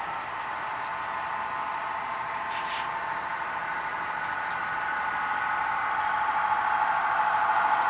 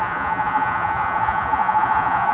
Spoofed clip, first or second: second